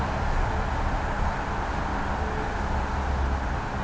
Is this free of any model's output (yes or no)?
yes